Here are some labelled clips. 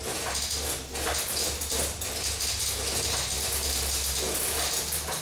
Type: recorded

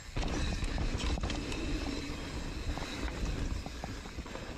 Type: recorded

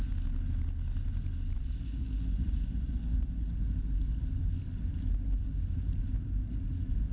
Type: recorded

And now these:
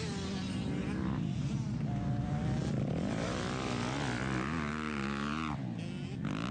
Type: recorded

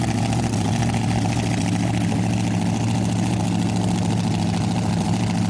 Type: recorded